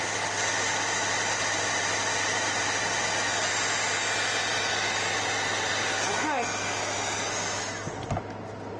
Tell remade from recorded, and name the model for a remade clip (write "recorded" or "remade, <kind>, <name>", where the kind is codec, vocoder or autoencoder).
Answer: recorded